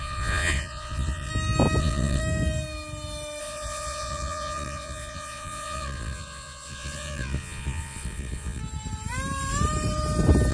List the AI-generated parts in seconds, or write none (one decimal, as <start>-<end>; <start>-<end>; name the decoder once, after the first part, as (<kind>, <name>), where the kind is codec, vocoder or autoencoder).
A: 0.0-1.3 (vocoder, Vocos); 1.8-2.2; 3.4-8.6